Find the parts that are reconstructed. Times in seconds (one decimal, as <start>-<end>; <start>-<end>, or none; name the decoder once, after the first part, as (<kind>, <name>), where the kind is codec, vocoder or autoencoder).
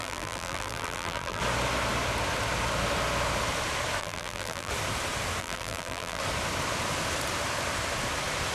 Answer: 0.0-1.4 (vocoder, BigVGAN v2); 4.0-4.7; 5.4-6.2